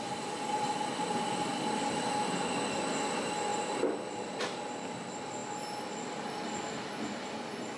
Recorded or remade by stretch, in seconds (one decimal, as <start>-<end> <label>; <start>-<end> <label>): 0.0-1.5 recorded; 1.5-2.0 remade; 2.0-7.8 recorded